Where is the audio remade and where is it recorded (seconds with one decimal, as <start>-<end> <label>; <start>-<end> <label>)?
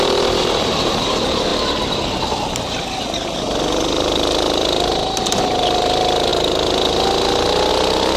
0.0-8.2 recorded